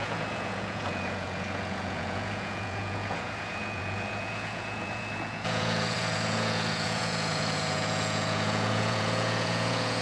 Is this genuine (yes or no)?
no